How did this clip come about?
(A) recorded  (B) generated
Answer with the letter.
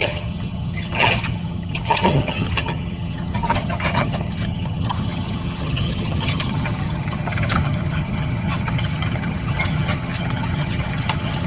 B